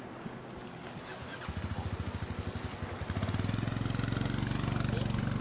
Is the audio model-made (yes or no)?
no